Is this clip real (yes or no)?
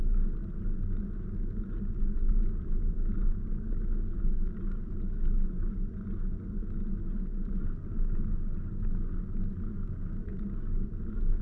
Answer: yes